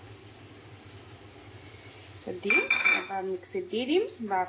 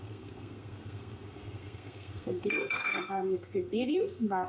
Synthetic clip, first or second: second